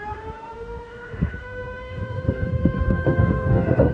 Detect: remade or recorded remade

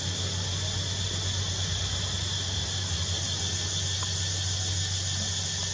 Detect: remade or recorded recorded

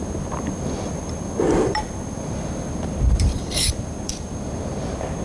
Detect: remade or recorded remade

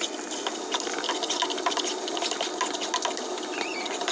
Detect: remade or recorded recorded